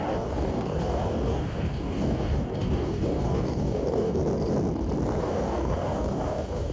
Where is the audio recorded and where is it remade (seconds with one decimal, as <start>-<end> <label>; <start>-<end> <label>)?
0.0-4.2 remade; 4.2-5.2 recorded; 5.2-6.7 remade